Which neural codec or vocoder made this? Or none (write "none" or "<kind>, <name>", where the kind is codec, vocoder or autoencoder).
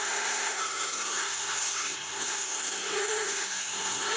codec, SNAC